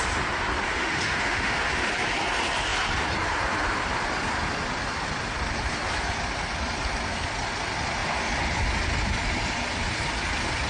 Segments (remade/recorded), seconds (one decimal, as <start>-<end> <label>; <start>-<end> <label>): 0.0-0.8 recorded; 0.8-1.9 remade; 1.9-10.7 recorded